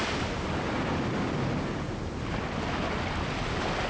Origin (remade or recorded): recorded